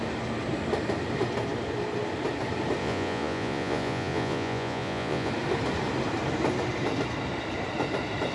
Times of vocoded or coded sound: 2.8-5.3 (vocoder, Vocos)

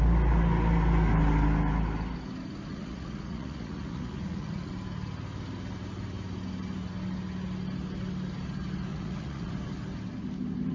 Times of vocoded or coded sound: 2.7-4.7 (vocoder, Vocos); 8.9-9.5

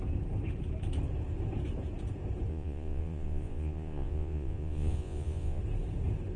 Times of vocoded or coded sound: 2.5-5.6 (vocoder, Vocos)

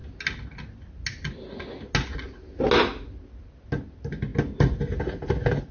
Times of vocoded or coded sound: none

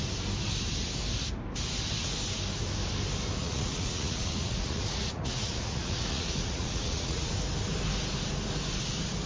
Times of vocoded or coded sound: 3.4-7.3 (vocoder, Vocos)